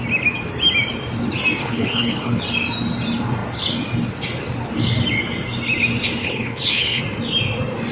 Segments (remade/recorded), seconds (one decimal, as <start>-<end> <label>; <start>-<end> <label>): 0.0-1.6 recorded; 1.6-2.4 remade; 2.4-6.2 recorded; 6.2-7.0 remade; 7.0-7.9 recorded